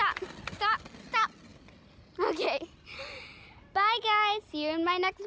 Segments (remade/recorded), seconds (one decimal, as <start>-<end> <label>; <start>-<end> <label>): 0.0-5.3 recorded